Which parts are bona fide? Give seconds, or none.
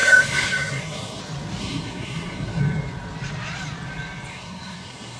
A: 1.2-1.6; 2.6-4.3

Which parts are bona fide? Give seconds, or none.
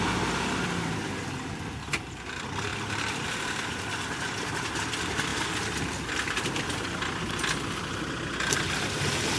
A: 0.0-9.4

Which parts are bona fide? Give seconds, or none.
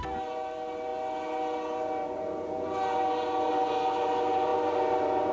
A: 0.0-5.3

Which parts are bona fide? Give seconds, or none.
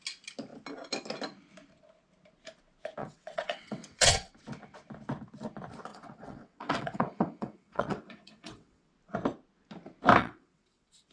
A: 0.0-3.0; 4.3-5.9; 8.9-10.2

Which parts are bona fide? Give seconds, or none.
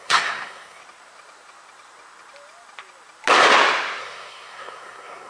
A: 0.8-4.0